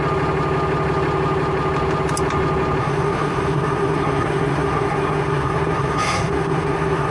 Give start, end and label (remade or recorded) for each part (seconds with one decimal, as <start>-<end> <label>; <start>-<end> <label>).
0.0-2.8 recorded; 2.8-7.1 remade